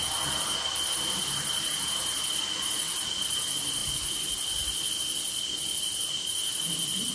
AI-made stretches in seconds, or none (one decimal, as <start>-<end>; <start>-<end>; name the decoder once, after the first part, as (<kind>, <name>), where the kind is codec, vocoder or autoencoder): none